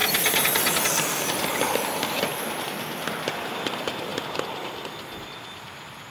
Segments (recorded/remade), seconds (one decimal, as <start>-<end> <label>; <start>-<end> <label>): 0.0-2.3 recorded; 2.3-2.9 remade; 2.9-4.1 recorded; 4.1-4.7 remade; 4.7-6.1 recorded